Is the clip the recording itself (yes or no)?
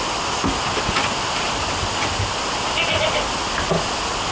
yes